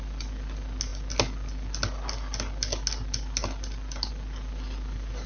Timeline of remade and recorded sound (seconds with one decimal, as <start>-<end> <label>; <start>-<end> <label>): 0.0-5.3 recorded